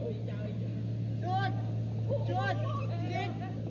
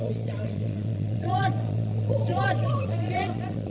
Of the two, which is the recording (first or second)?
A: first